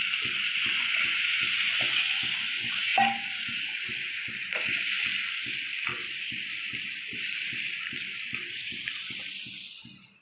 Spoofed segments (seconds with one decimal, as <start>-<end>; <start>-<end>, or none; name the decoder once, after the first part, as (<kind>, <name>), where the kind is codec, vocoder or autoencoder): 5.9-9.4 (vocoder, BigVGAN v2)